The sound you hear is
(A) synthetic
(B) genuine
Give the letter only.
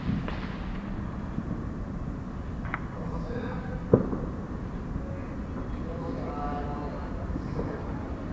B